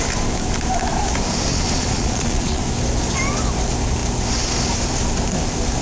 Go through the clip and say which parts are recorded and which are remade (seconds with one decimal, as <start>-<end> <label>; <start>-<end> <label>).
0.0-1.5 recorded; 1.5-2.6 remade; 2.6-5.8 recorded